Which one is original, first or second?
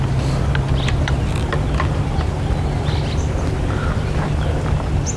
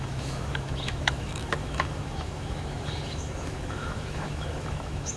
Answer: first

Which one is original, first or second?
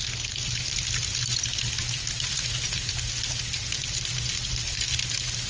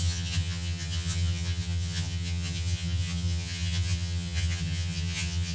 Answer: first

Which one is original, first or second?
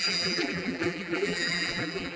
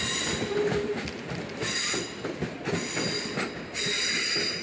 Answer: second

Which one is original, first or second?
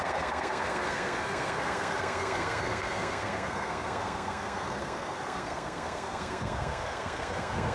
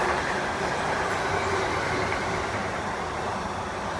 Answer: second